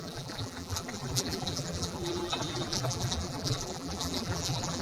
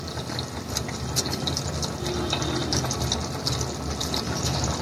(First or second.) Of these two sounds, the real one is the second